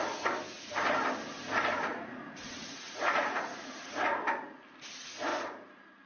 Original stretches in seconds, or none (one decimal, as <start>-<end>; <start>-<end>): 0.0-1.9; 3.8-6.1